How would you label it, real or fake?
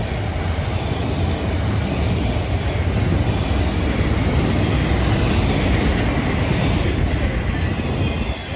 real